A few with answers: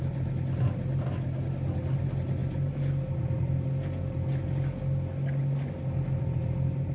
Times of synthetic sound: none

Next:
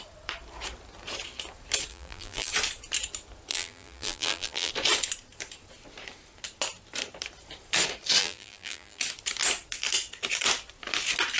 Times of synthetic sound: 1.9-2.5; 3.5-4.7; 8.2-9.0

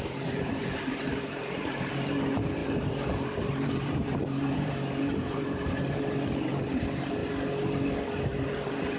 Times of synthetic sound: 0.0-7.2; 8.2-9.0

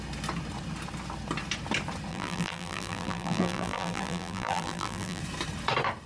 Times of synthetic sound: 2.1-5.2

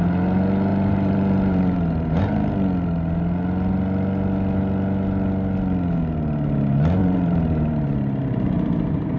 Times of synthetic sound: 0.7-2.2; 7.0-9.2

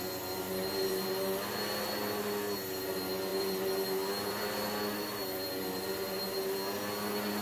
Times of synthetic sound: none